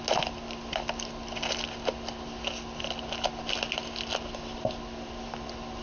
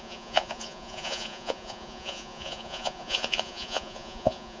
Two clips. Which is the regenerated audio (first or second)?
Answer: second